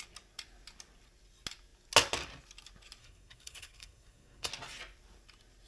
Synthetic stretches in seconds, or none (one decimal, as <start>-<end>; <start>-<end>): 3.0-4.5